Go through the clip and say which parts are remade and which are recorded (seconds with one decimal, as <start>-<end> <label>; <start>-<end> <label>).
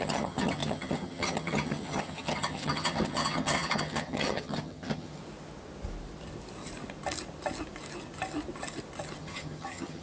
0.0-5.2 remade; 5.2-9.2 recorded; 9.2-10.0 remade